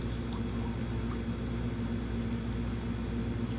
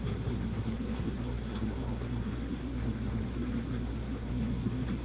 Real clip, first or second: first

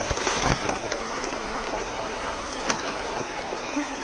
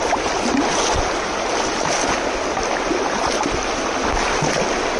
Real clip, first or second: second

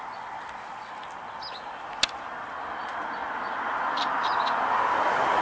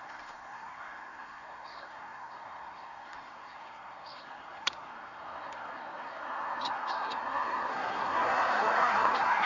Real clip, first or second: first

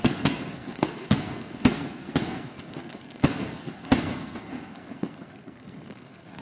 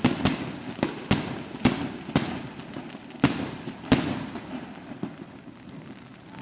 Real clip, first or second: second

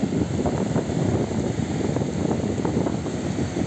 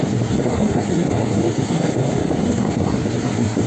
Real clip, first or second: first